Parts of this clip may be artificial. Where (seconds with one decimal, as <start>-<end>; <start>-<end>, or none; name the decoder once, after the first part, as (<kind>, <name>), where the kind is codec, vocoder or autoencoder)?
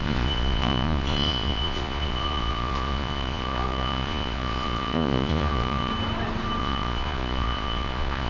0.0-5.9 (vocoder, Vocos); 6.6-8.3